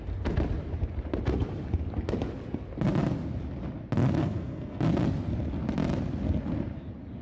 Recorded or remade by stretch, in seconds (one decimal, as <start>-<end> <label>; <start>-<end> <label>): 0.0-4.2 recorded; 4.2-4.8 remade; 4.8-7.2 recorded